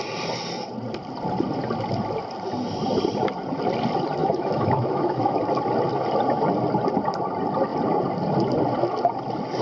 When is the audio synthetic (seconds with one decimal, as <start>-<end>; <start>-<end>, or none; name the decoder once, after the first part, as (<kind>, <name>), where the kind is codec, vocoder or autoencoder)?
4.2-5.4 (autoencoder, DAC-VAE)